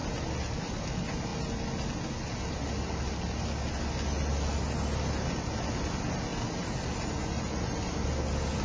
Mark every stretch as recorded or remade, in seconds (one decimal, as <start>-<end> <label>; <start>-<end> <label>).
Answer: 0.0-8.6 recorded